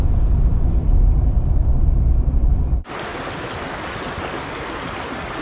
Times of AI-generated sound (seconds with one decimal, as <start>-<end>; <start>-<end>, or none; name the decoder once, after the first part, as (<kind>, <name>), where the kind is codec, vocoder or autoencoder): none